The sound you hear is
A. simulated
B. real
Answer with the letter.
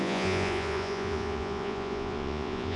A